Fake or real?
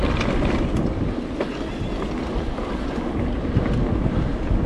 real